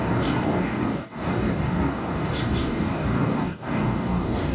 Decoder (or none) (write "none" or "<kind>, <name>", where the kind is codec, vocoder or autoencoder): codec, DAC